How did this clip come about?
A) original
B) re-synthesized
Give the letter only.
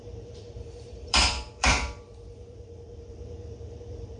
B